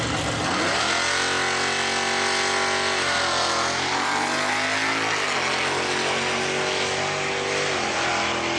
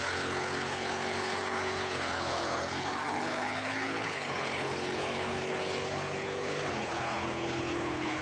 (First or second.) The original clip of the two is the first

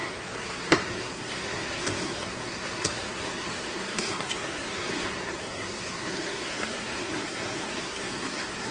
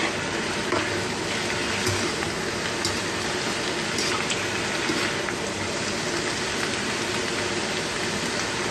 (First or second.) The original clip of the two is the second